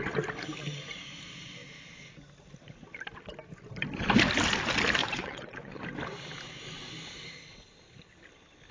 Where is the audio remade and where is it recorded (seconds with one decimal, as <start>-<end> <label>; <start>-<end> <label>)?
0.0-5.0 recorded; 5.0-5.8 remade; 5.8-8.7 recorded